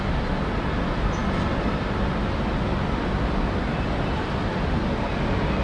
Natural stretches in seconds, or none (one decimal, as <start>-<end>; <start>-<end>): 0.0-5.6